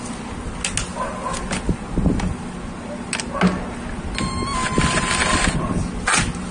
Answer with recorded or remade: recorded